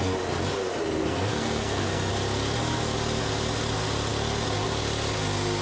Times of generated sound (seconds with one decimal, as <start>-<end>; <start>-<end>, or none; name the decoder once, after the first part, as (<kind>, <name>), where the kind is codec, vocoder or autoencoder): 1.0-2.1 (codec, SNAC)